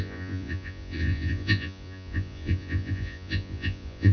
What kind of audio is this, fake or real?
fake